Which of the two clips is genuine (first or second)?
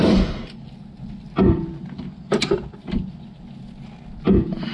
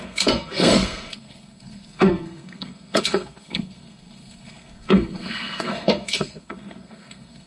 first